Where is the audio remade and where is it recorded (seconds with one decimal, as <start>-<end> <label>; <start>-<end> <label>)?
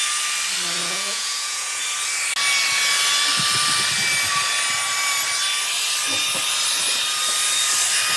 0.0-0.8 recorded; 0.8-1.8 remade; 1.8-8.2 recorded